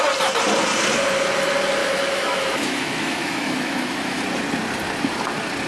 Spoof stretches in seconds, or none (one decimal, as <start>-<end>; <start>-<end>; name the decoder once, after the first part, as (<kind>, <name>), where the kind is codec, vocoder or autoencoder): 1.8-4.2 (autoencoder, DAC-VAE)